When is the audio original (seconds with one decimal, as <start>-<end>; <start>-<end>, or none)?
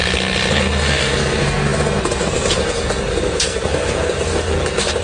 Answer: 0.0-0.5